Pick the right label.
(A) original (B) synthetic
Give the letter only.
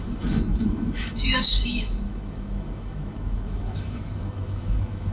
B